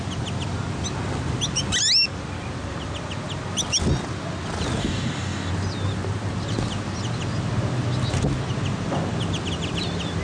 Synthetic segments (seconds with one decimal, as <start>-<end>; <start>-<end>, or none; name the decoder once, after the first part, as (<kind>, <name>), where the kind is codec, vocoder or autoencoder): 4.8-5.5 (codec, DAC)